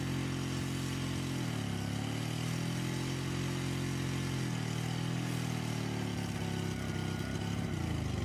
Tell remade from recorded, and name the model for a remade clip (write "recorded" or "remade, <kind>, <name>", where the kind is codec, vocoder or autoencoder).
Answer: recorded